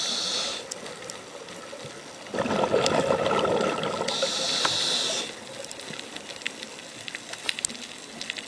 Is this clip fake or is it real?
real